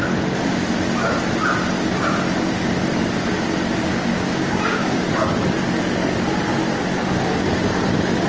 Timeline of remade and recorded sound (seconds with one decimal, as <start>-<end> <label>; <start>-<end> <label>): 0.0-3.9 recorded; 3.9-5.0 remade; 5.0-8.3 recorded